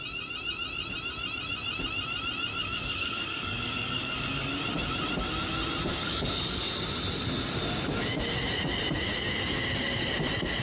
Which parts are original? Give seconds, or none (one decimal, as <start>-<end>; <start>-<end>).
0.0-2.6; 4.5-5.9; 6.7-10.6